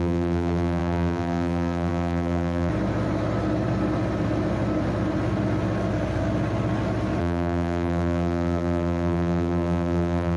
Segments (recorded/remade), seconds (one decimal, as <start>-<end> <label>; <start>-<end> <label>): 0.0-2.7 remade; 2.7-7.2 recorded; 7.2-10.4 remade